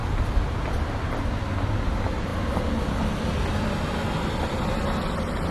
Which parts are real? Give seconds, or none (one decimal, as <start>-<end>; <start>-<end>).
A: 0.0-5.5